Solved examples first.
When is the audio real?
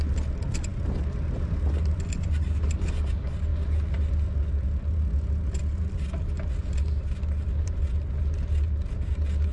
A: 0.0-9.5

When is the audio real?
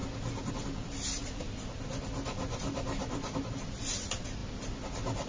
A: 0.0-0.5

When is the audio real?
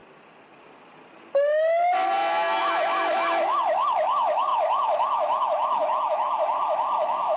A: 0.0-2.6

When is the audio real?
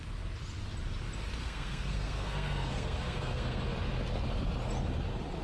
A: 0.0-1.4; 3.6-5.4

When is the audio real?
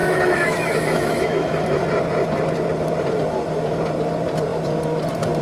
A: 1.7-5.4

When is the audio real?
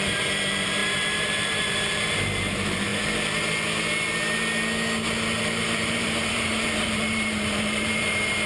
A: 2.9-5.4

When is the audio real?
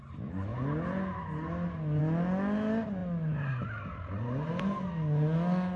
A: 0.0-5.8